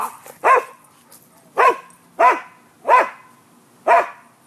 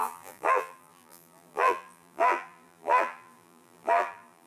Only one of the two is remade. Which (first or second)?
second